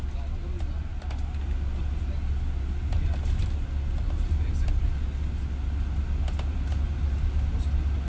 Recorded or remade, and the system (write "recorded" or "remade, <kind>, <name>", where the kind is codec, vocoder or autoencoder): recorded